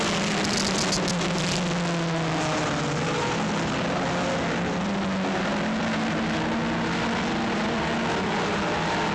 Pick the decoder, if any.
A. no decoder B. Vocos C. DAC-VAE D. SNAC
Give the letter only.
A